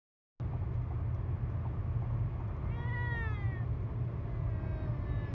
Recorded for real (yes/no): yes